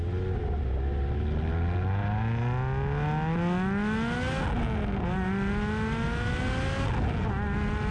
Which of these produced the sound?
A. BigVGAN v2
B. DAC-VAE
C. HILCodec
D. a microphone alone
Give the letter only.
D